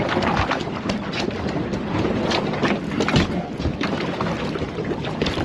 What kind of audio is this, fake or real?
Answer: real